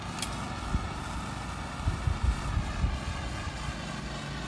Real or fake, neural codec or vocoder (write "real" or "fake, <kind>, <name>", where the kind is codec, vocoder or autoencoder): real